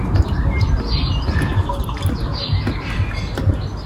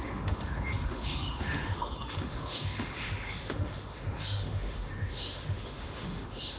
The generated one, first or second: second